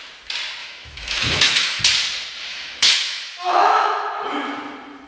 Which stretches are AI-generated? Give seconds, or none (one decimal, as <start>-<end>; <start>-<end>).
0.6-1.8; 2.5-4.1